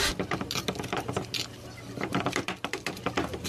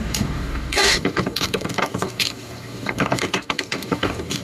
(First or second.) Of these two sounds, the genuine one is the first